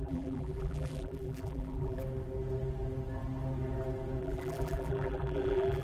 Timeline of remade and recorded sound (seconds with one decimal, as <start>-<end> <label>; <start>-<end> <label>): 0.0-2.0 remade; 2.0-4.2 recorded; 4.2-5.8 remade